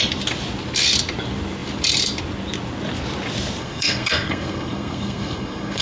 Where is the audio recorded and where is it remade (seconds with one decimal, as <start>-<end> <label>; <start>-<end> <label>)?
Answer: 0.0-3.6 recorded; 3.6-5.8 remade